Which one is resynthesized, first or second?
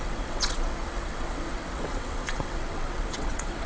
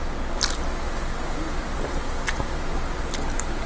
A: first